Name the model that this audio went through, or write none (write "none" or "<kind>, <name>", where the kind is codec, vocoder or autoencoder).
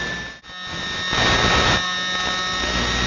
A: none